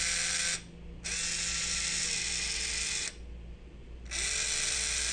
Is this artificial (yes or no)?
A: no